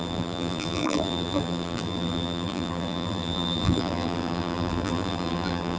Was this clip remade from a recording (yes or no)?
yes